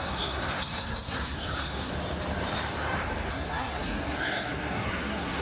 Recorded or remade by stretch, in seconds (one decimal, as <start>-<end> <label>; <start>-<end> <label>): 0.0-1.9 remade; 1.9-3.3 recorded; 3.3-5.4 remade